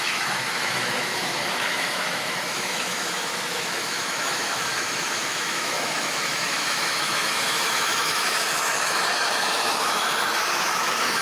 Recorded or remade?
remade